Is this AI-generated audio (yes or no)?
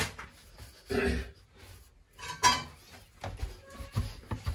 no